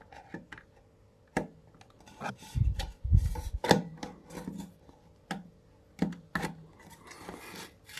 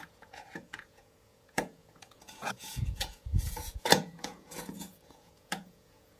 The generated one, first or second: second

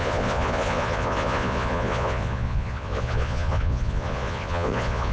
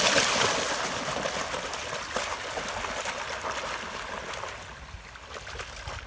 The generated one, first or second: first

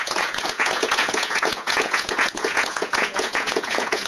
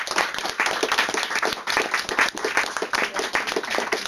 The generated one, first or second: first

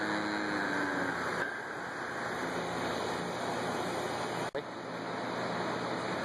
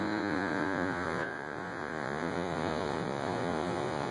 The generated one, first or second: second